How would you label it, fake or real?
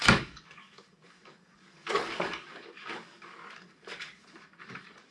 fake